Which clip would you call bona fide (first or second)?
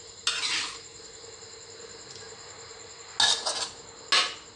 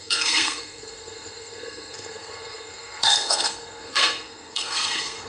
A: first